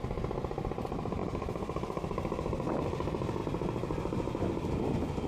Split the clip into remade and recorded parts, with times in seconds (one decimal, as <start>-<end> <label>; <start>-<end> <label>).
0.0-5.3 recorded